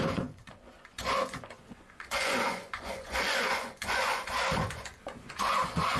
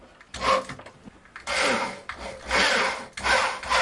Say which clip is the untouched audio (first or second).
second